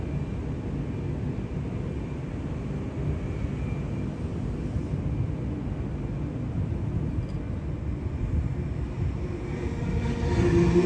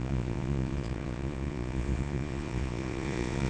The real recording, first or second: first